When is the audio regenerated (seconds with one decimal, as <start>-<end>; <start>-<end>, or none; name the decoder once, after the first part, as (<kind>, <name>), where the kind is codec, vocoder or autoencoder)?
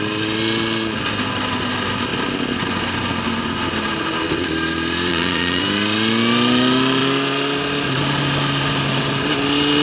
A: 5.1-5.6 (vocoder, Vocos)